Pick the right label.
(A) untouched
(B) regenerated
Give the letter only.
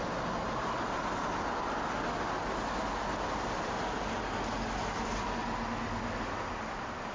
A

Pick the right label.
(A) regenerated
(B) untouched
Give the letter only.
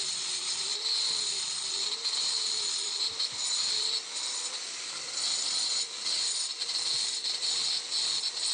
B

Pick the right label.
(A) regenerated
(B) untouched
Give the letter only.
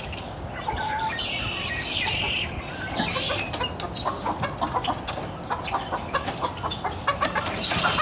B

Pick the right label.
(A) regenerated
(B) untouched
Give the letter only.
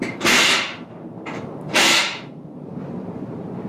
A